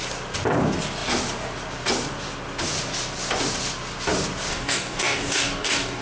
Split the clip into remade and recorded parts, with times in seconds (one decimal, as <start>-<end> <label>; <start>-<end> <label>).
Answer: 0.0-4.5 recorded; 4.5-6.0 remade